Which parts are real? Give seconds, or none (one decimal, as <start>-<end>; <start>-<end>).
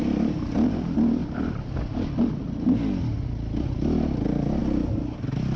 0.0-5.6